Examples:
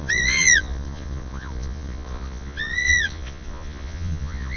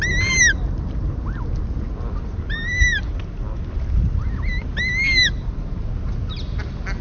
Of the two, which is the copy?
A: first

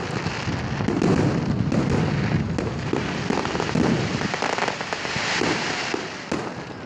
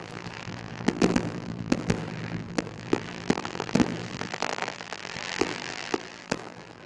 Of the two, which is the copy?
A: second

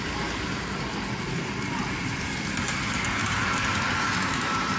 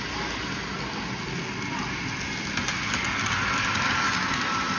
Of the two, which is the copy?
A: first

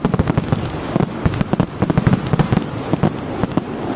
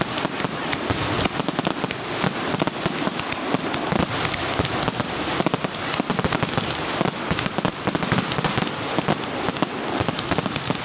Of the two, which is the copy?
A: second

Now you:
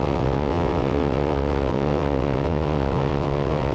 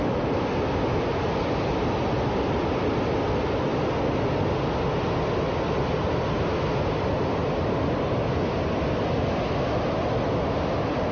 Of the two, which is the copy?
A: first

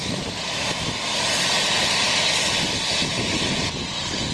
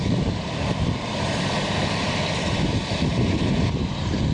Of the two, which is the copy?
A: second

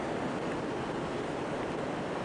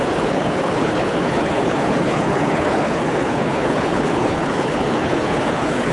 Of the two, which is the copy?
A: second